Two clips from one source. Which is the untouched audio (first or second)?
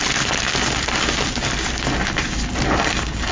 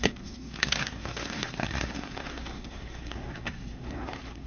first